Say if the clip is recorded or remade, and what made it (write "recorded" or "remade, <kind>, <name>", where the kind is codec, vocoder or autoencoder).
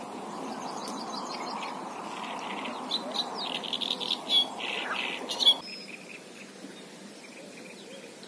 recorded